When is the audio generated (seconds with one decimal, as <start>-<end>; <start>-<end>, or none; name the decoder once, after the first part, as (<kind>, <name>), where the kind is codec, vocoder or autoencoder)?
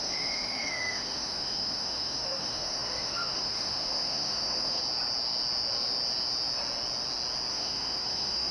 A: 0.0-4.8 (autoencoder, DAC-VAE); 7.5-8.5